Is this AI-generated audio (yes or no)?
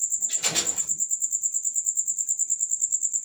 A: no